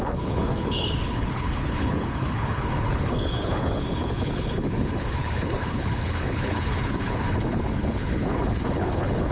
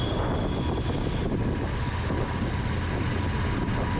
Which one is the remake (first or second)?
first